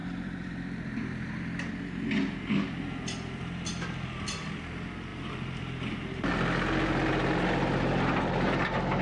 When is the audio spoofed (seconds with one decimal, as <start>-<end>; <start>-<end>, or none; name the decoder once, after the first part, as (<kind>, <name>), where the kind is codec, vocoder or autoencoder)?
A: 0.0-1.4 (vocoder, BigVGAN v2); 5.1-6.3